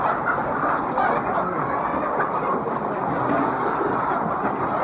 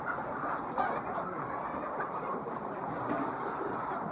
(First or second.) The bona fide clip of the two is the first